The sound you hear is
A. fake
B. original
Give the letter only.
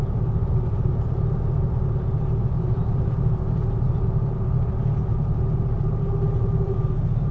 A